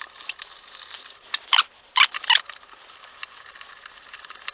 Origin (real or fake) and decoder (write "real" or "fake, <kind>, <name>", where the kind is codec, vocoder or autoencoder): real